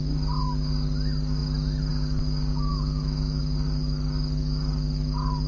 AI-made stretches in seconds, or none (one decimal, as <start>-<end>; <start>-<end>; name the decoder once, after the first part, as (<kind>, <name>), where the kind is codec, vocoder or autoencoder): 2.7-3.4 (autoencoder, DAC-VAE)